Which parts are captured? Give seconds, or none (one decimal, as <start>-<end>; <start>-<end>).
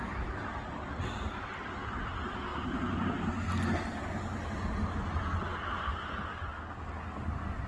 0.0-7.7